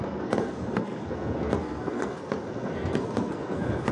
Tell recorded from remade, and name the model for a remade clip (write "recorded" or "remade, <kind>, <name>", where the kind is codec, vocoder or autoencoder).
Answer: remade, codec, SNAC